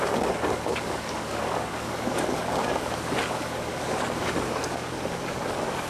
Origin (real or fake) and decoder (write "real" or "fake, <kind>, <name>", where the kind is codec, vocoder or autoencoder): fake, codec, DAC